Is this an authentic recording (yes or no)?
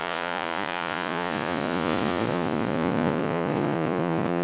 no